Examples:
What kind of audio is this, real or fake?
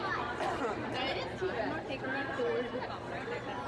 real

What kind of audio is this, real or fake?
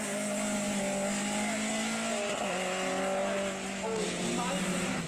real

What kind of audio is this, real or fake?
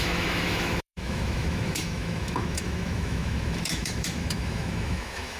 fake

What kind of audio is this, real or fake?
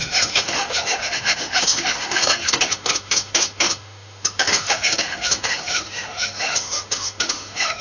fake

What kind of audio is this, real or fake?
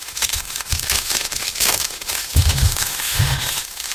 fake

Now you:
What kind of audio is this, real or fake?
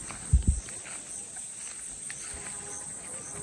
real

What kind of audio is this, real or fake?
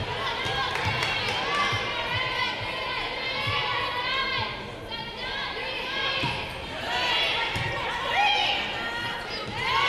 real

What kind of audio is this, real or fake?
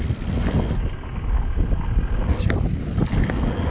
real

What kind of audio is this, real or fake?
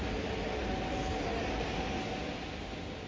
real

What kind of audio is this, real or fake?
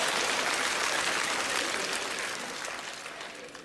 real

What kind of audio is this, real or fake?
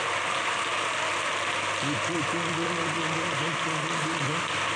real